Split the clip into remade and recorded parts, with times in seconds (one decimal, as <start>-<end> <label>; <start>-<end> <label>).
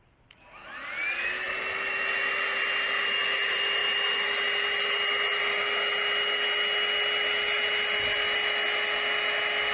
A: 0.0-9.7 recorded